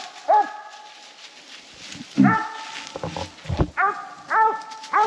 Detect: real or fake real